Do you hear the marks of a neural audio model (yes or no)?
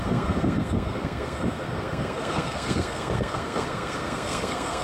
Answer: yes